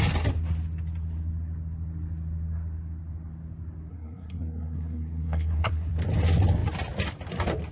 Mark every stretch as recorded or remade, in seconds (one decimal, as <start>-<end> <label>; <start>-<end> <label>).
0.0-3.9 recorded; 3.9-5.9 remade; 5.9-7.7 recorded